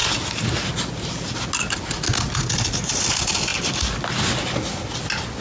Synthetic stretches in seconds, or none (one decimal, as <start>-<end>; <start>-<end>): none